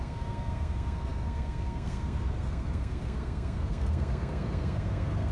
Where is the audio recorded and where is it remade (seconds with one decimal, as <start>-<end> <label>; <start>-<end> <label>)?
0.0-5.3 remade